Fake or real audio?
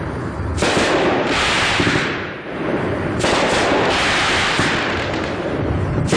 fake